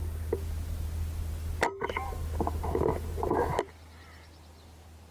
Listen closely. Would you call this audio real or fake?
real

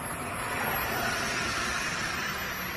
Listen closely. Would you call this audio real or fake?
real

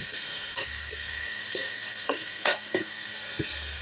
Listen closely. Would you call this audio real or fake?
fake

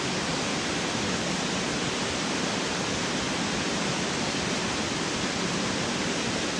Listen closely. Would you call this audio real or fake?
real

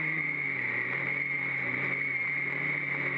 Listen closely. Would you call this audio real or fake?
real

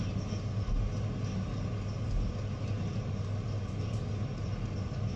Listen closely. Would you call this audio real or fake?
real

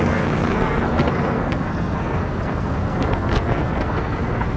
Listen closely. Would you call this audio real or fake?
fake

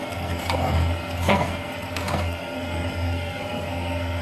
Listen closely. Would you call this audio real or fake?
fake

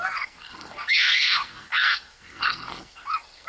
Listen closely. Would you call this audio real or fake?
fake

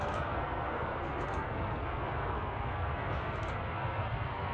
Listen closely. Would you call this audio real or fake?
fake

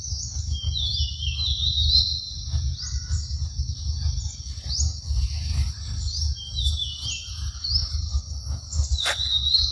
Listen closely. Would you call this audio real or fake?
real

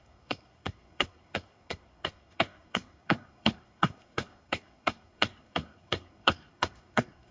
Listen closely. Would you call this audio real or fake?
fake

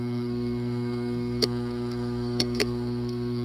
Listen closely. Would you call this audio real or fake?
fake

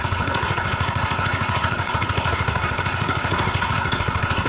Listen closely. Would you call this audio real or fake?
fake